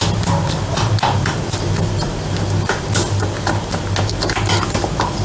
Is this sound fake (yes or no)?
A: no